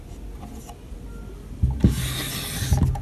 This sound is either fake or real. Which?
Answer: real